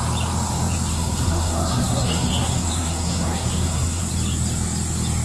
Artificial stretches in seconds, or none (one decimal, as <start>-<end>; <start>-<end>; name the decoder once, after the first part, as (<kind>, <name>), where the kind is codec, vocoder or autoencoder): 0.9-4.0 (codec, SNAC)